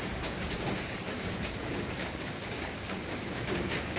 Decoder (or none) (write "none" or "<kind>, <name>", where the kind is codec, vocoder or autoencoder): codec, DAC